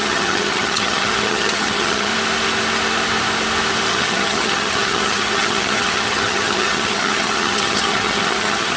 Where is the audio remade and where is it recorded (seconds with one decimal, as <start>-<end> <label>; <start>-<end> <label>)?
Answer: 0.0-2.1 remade; 2.1-3.9 recorded; 3.9-8.8 remade

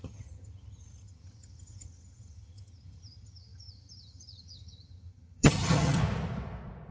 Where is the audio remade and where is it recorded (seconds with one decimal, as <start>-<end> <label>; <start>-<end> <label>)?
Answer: 0.0-6.0 remade; 6.0-6.9 recorded

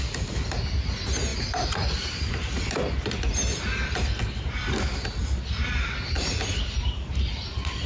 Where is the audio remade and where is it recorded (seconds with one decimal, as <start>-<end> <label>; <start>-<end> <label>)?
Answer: 0.0-7.9 recorded

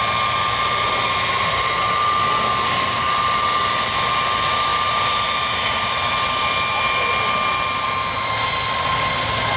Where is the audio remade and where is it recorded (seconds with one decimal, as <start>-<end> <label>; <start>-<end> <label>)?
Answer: 0.0-9.6 recorded

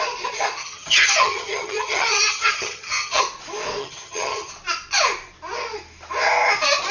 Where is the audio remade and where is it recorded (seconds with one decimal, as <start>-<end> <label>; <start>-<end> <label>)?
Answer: 0.0-0.6 recorded; 0.6-3.2 remade; 3.2-3.8 recorded; 3.8-4.5 remade; 4.5-6.9 recorded

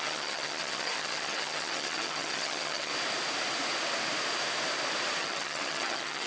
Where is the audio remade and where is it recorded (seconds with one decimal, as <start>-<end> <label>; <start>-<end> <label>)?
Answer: 0.0-2.9 remade; 2.9-5.2 recorded; 5.2-6.3 remade